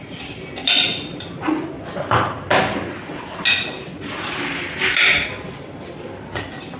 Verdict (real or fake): real